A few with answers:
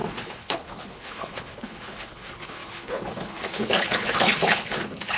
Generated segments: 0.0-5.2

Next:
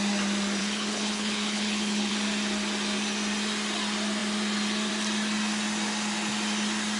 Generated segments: 0.6-2.1

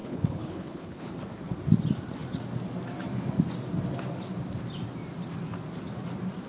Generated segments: 0.0-1.1

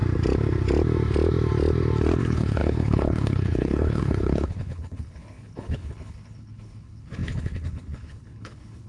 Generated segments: 2.2-8.9

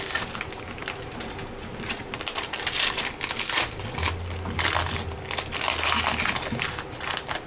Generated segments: none

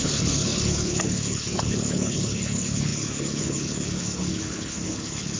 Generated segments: 0.0-5.4

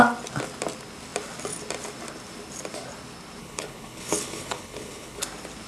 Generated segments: 3.4-5.2